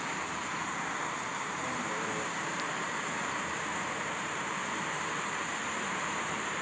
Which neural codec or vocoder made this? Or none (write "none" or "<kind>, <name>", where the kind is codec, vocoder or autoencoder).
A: vocoder, BigVGAN v2